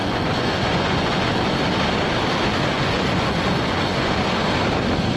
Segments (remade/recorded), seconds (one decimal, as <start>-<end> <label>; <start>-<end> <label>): 0.0-1.3 remade; 1.3-2.6 recorded; 2.6-4.2 remade; 4.2-5.2 recorded